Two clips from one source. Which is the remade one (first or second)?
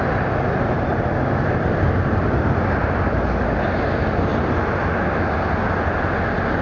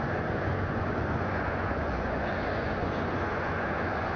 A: second